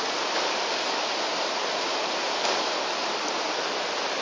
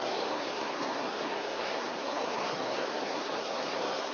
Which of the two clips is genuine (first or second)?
first